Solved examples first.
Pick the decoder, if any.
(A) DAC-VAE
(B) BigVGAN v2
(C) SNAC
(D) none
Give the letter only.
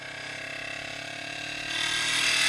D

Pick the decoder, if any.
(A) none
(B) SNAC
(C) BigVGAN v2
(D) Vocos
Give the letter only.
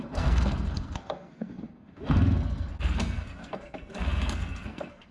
B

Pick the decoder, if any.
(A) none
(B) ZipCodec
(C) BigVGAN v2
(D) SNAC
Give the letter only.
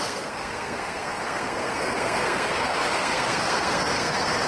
D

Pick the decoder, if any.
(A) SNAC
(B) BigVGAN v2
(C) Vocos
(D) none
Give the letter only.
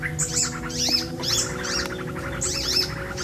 D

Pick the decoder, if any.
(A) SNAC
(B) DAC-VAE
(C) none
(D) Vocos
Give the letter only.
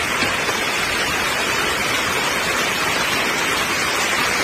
C